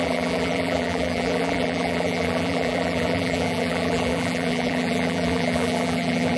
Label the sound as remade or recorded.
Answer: remade